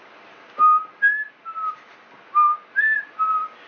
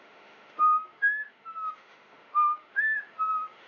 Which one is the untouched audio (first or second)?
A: first